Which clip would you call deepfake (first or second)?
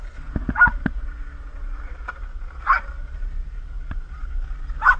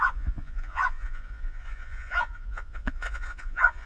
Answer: second